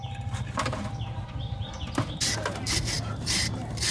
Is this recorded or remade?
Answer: remade